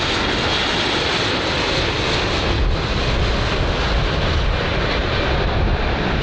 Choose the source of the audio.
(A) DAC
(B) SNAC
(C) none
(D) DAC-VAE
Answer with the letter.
C